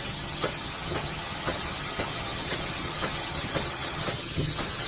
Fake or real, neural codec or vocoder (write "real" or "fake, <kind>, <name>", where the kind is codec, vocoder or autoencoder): fake, vocoder, HiFi-GAN